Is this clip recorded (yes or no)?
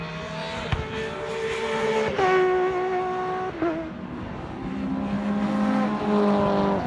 yes